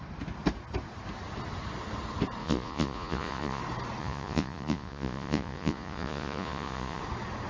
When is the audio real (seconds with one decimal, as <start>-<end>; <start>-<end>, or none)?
0.0-2.4; 3.6-4.0; 7.0-7.5